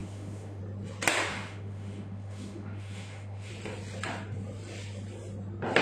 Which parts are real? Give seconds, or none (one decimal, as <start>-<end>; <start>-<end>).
0.6-1.3; 3.5-5.8